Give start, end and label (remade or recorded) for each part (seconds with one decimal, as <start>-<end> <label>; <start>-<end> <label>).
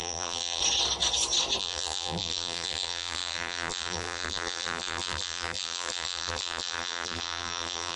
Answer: 0.0-0.6 remade; 0.6-1.6 recorded; 1.6-8.0 remade